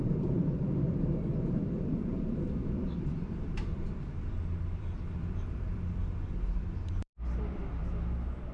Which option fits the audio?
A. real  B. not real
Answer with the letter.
B